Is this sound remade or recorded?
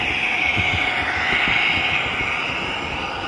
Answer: recorded